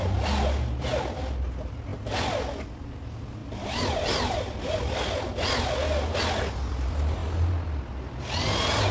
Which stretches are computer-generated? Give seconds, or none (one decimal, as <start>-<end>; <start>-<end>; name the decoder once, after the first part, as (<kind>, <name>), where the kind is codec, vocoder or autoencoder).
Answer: none